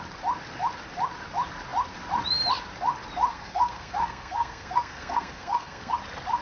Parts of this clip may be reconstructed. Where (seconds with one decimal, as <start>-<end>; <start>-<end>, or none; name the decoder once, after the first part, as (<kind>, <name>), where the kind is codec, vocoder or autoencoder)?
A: 3.3-5.9 (codec, SNAC)